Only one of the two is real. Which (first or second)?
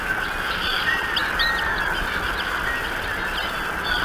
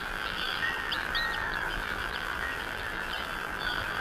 first